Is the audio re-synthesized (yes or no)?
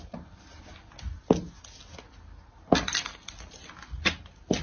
no